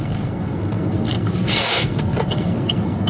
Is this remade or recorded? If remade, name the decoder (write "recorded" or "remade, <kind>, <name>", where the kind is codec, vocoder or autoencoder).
remade, codec, SNAC